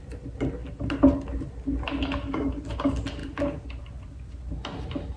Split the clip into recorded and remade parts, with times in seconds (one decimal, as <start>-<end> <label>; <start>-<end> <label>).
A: 0.0-5.2 recorded